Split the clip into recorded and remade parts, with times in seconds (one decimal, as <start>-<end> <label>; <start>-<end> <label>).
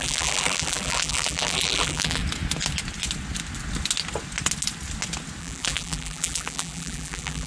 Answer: 0.0-2.2 remade; 2.2-5.4 recorded; 5.4-7.5 remade